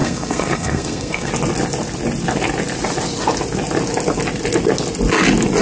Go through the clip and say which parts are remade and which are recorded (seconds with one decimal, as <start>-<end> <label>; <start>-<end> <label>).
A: 0.0-1.3 remade; 1.3-5.6 recorded